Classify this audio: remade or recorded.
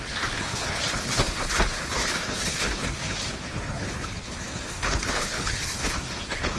remade